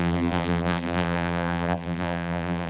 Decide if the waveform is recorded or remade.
remade